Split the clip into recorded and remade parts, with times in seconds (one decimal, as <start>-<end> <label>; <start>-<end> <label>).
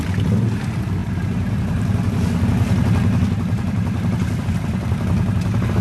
0.0-5.8 recorded